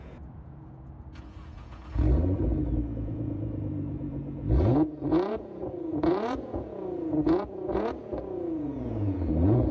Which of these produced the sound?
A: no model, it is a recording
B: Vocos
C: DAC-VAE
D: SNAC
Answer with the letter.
B